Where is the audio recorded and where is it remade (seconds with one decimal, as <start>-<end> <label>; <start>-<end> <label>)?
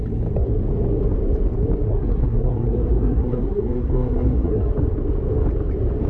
0.0-1.9 recorded; 1.9-4.7 remade; 4.7-6.1 recorded